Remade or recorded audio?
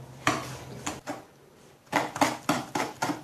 recorded